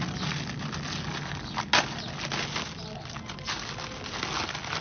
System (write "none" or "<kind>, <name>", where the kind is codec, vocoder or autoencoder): none